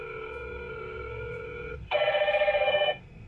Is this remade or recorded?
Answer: remade